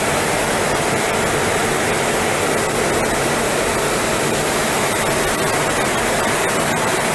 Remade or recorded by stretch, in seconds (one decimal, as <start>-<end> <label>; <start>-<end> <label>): 0.0-7.1 recorded